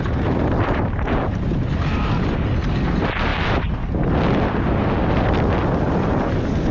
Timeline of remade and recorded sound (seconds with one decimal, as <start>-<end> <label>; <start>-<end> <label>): 0.0-6.7 recorded